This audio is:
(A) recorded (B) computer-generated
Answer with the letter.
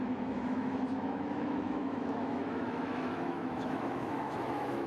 B